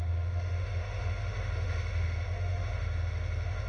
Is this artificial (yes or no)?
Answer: yes